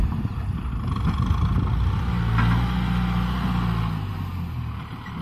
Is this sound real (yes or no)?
yes